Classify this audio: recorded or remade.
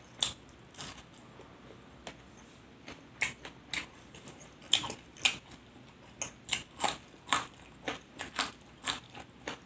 recorded